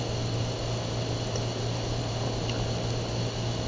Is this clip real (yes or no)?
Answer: yes